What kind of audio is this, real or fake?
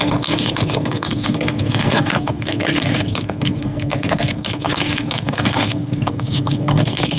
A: fake